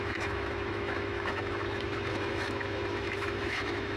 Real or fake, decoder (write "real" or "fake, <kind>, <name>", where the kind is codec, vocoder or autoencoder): fake, autoencoder, DAC-VAE